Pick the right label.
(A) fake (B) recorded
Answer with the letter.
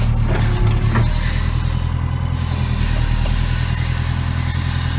B